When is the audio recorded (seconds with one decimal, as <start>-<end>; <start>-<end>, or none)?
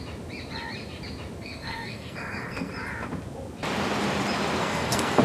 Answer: 0.0-1.4; 2.7-4.6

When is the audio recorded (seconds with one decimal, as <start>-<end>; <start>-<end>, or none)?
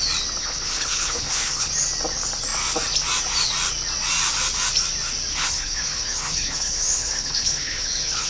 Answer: 0.0-0.4; 1.7-5.3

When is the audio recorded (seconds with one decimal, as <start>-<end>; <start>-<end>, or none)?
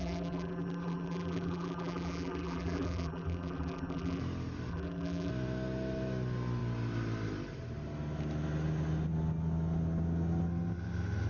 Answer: 4.2-4.7; 5.3-11.3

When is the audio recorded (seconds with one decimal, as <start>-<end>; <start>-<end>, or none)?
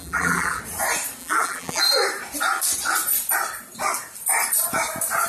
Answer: 0.6-1.2; 1.8-5.3